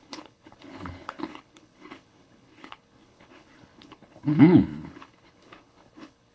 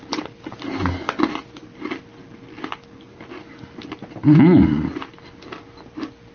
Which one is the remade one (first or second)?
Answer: first